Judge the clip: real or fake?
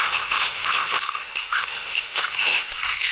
fake